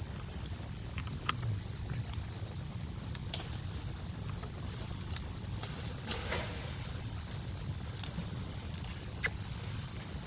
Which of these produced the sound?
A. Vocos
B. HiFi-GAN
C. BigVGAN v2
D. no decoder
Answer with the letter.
D